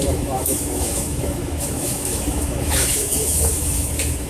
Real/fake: fake